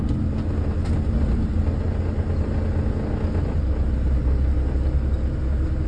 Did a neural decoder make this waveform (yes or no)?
no